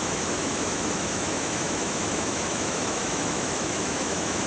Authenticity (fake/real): fake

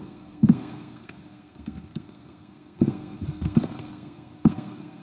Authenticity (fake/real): fake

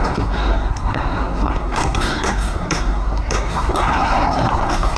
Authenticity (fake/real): fake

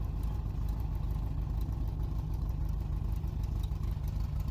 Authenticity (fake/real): real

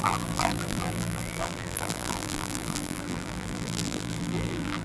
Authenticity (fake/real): fake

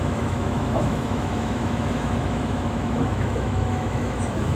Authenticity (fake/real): fake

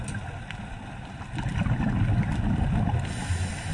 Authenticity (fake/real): real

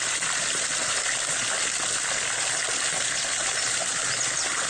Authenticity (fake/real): real